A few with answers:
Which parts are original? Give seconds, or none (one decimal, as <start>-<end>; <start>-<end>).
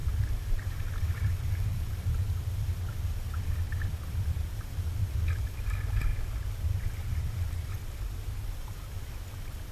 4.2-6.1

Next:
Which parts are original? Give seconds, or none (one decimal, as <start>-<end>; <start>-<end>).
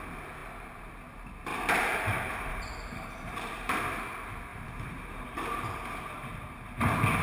0.0-1.5; 3.8-4.5; 5.4-7.2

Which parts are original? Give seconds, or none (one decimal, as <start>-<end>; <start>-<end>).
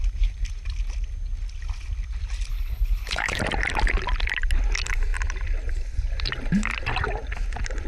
0.0-2.5; 3.4-7.9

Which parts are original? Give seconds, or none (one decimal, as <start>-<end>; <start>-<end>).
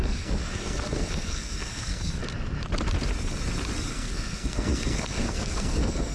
2.2-3.9